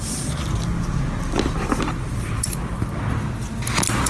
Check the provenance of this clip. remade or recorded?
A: recorded